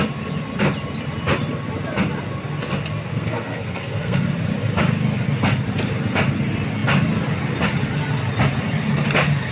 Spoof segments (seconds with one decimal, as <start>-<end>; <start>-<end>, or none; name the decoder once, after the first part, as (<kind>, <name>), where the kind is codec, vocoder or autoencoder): 3.1-4.2 (codec, SNAC)